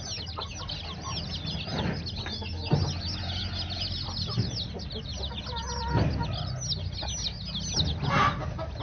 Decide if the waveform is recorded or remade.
recorded